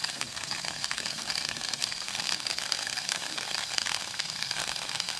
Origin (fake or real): fake